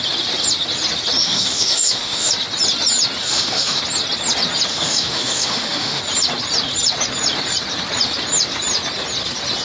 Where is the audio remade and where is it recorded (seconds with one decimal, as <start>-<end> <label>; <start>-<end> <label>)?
0.0-1.2 recorded; 1.2-2.3 remade; 2.3-3.2 recorded; 3.2-3.8 remade; 3.8-4.7 recorded; 4.7-6.0 remade; 6.0-9.6 recorded